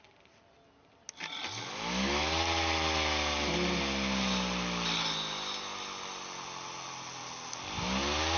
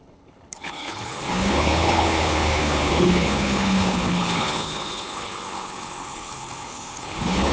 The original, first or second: first